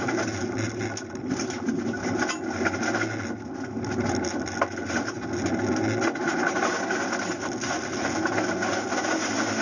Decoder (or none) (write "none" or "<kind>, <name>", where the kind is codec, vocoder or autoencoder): none